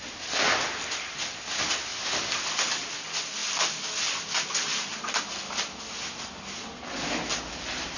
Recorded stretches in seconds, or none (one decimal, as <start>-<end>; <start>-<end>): 0.0-8.0